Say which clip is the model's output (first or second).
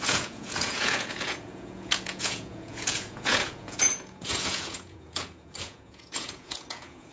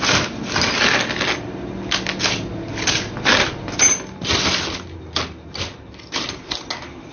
first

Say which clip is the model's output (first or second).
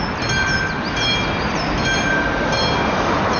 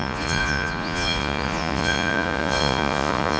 second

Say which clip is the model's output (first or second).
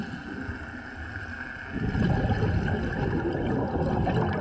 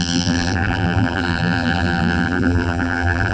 second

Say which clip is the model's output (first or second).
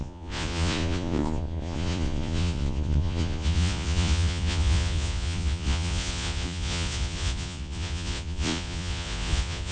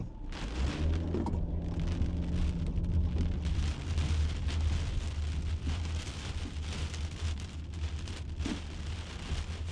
first